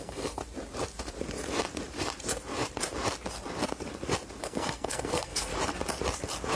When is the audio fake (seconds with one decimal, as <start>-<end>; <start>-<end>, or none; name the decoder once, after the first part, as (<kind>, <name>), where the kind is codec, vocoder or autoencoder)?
0.0-0.4 (codec, SNAC); 4.4-5.5